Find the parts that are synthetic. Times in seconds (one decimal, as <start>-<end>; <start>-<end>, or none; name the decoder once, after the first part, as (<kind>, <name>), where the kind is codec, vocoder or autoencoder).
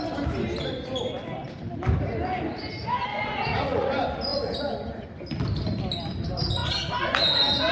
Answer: 3.1-3.9 (vocoder, Vocos)